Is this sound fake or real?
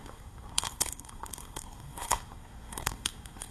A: fake